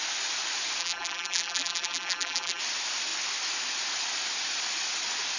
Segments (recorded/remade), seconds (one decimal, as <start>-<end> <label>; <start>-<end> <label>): 0.0-0.8 recorded; 0.8-2.6 remade; 2.6-5.4 recorded